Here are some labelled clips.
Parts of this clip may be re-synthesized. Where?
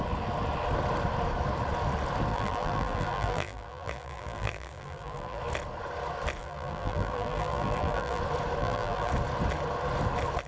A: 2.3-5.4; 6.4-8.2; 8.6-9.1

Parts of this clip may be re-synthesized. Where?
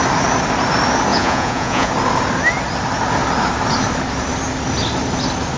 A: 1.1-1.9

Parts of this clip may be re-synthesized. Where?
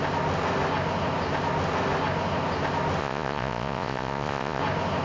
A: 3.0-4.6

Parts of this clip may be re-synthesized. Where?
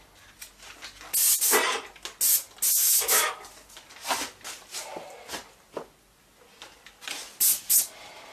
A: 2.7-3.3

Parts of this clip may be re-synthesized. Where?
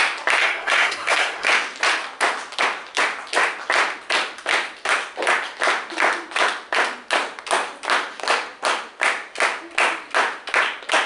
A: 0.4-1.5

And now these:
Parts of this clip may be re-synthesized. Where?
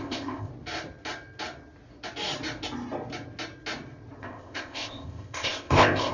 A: 0.0-0.5; 4.2-6.1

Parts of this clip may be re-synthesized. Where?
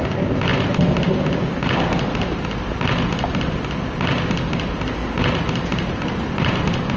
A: 5.7-6.6